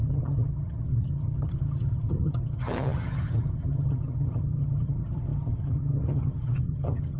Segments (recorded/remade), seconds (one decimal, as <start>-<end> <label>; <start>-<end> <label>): 0.0-7.2 remade